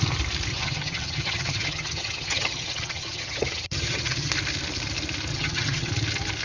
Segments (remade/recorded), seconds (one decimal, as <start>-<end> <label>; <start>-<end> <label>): 0.0-0.5 recorded; 0.5-4.3 remade; 4.3-5.3 recorded; 5.3-5.9 remade; 5.9-6.4 recorded